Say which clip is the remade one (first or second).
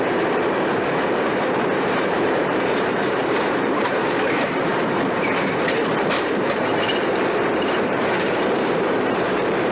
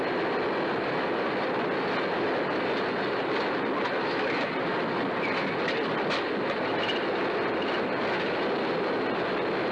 first